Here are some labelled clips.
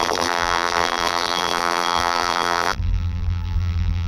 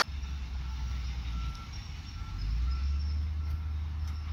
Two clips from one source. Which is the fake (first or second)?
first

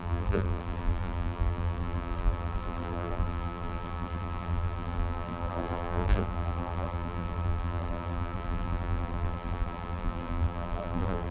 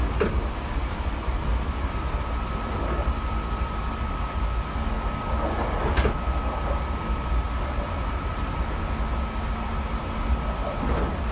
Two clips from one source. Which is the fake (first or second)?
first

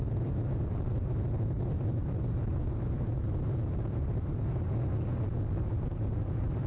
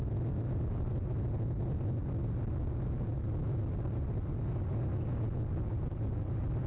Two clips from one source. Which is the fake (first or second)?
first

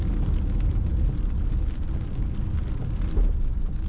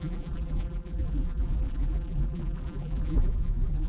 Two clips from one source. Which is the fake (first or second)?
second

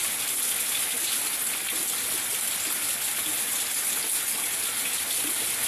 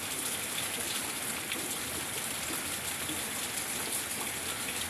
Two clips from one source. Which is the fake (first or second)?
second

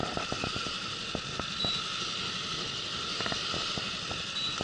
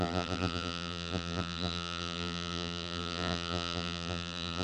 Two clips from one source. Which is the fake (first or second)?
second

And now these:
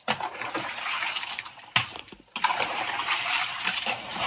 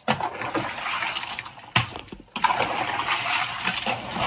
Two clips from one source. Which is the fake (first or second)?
first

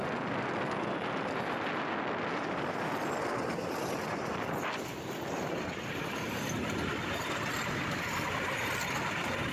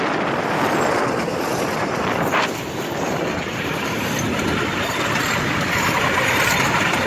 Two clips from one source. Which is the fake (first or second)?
second